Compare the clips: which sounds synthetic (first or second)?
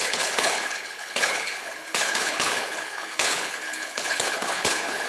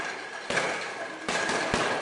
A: first